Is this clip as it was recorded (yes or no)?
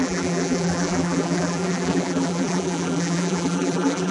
no